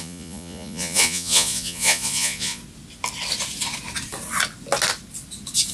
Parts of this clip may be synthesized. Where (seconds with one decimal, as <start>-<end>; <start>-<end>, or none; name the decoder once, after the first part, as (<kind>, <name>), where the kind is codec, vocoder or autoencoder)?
0.0-2.6 (vocoder, Vocos)